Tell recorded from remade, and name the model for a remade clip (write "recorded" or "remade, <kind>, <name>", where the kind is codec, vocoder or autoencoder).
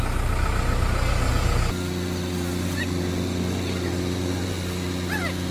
recorded